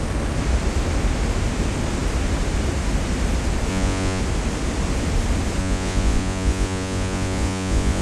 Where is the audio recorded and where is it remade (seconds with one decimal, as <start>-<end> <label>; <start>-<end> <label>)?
0.0-3.7 recorded; 3.7-4.2 remade; 4.2-5.6 recorded; 5.6-8.0 remade